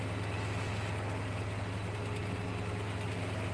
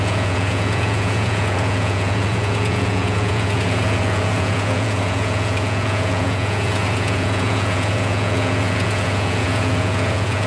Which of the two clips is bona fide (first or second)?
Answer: first